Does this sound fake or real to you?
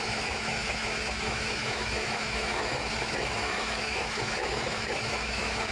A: fake